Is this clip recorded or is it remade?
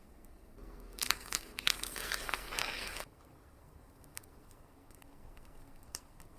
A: remade